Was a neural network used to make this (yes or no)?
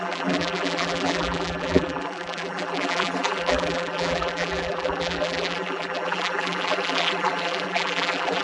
yes